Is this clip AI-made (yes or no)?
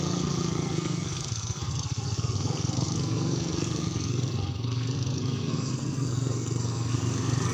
yes